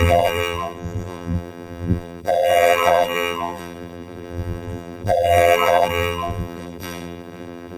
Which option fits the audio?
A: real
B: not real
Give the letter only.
B